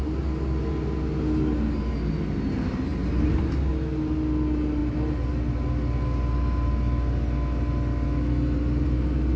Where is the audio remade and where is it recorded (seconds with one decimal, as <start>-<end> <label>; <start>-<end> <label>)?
0.0-9.4 recorded